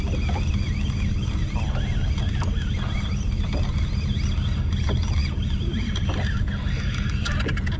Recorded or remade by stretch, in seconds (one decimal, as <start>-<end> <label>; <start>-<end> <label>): 0.0-7.8 recorded